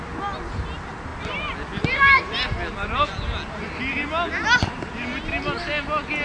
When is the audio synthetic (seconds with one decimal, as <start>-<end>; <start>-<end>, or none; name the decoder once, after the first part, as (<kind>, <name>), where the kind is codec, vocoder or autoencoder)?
none